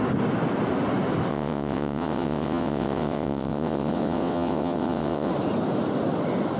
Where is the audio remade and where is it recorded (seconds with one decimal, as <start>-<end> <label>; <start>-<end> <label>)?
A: 0.0-1.3 recorded; 1.3-5.3 remade; 5.3-6.6 recorded